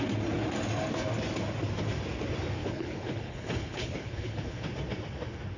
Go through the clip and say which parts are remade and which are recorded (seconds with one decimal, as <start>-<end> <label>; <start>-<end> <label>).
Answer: 0.0-2.6 recorded; 2.6-4.6 remade; 4.6-5.6 recorded